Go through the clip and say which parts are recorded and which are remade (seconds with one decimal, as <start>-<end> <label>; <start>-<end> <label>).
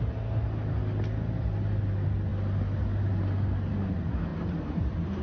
0.0-4.3 recorded; 4.3-5.2 remade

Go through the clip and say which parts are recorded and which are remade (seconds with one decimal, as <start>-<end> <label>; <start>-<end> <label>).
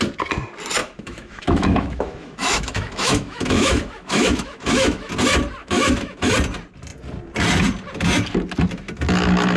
0.0-0.8 recorded; 0.8-5.1 remade; 5.1-5.6 recorded; 5.6-6.3 remade; 6.3-9.6 recorded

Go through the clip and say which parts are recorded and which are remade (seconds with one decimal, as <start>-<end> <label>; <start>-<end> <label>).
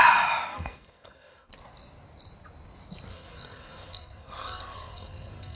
0.0-0.4 recorded; 0.4-1.5 remade; 1.5-3.1 recorded; 3.1-5.6 remade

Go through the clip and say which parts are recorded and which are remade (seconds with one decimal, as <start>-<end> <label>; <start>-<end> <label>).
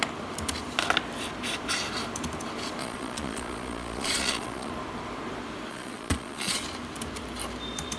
0.0-2.8 recorded; 2.8-4.7 remade; 4.7-5.7 recorded; 5.7-6.6 remade; 6.6-8.0 recorded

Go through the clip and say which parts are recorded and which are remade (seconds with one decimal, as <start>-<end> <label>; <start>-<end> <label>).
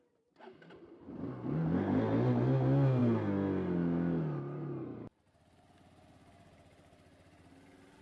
0.0-8.0 recorded